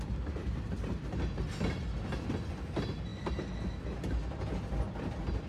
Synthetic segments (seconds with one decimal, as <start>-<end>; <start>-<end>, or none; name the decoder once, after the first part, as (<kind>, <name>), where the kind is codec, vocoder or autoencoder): none